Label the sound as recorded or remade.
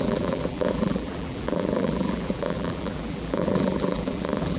remade